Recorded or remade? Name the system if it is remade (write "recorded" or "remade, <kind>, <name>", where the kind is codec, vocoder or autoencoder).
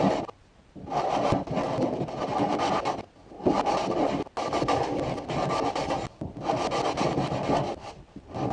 recorded